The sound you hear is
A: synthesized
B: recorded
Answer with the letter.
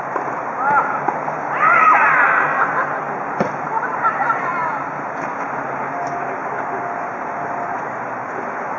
B